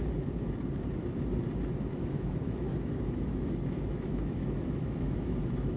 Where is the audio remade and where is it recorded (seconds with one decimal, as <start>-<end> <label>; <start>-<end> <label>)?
0.0-1.9 recorded; 1.9-5.8 remade